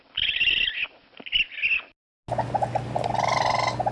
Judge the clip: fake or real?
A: real